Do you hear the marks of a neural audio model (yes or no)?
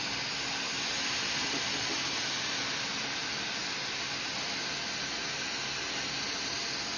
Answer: no